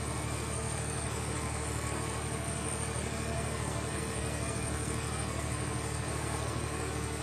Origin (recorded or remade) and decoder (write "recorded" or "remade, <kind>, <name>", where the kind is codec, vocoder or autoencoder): remade, codec, SNAC